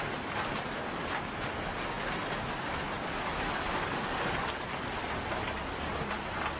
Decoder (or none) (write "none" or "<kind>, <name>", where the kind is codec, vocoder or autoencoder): none